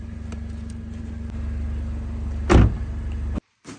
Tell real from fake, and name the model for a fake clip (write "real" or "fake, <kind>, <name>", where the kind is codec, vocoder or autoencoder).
real